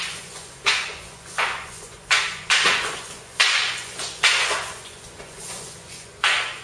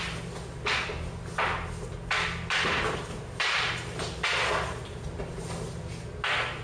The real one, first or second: second